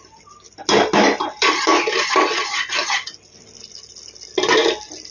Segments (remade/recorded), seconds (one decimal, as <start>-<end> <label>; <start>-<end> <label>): 0.0-5.1 recorded